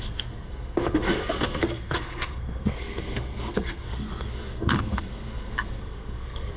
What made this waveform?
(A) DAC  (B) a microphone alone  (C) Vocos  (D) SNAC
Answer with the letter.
D